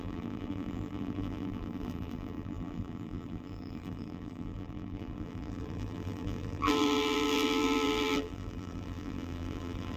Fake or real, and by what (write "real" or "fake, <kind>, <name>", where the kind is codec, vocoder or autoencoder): fake, vocoder, BigVGAN v2